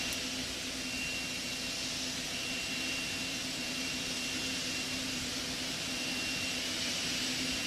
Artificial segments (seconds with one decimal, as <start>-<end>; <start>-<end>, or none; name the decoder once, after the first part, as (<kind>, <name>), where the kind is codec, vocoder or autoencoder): none